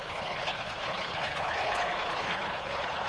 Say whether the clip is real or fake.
fake